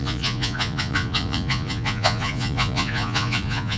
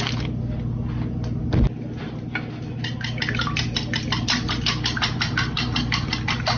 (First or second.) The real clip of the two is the second